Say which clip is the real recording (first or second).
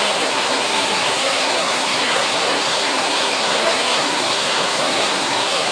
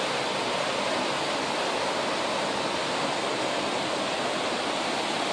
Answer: second